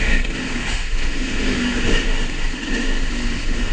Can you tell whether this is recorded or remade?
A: remade